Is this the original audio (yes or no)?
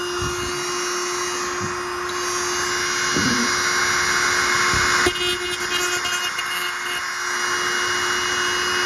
yes